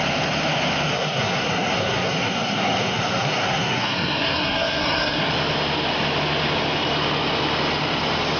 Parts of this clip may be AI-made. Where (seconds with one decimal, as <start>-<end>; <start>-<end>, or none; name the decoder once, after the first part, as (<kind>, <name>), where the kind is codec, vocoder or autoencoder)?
0.9-5.3 (codec, SNAC)